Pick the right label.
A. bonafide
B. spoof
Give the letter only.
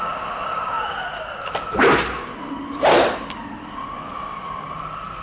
A